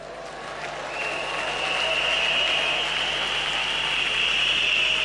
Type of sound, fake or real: real